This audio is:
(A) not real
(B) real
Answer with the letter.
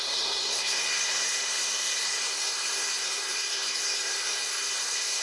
A